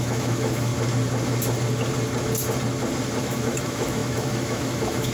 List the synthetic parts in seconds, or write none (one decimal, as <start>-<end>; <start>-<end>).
0.0-0.7; 3.2-5.1